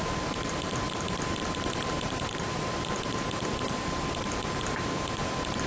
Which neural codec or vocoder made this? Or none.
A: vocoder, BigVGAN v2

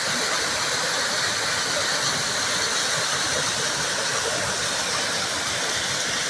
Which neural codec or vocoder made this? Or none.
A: none